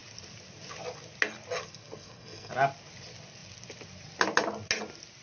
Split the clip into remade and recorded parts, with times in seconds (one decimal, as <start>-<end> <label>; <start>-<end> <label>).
0.0-1.6 recorded; 1.6-2.5 remade; 2.5-5.2 recorded